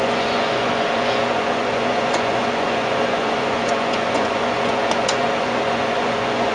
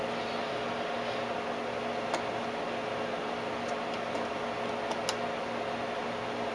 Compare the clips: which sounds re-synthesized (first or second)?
first